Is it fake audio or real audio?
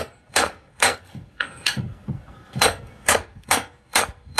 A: fake